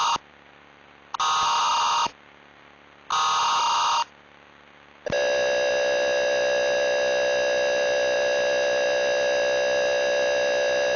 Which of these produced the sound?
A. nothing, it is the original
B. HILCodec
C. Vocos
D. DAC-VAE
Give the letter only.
A